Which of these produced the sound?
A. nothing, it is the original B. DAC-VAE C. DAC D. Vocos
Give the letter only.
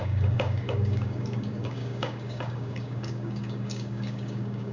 C